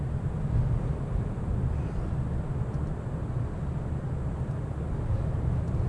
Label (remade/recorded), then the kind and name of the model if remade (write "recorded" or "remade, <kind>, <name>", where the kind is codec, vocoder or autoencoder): remade, vocoder, BigVGAN v2